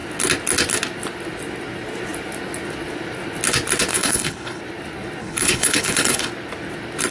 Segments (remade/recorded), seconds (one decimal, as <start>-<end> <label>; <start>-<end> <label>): 0.0-3.9 recorded; 3.9-4.6 remade; 4.6-5.2 recorded; 5.2-6.3 remade; 6.3-7.1 recorded